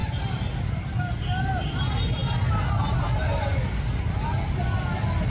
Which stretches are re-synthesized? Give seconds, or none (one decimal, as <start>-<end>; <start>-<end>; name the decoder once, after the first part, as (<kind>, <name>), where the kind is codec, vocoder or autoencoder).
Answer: none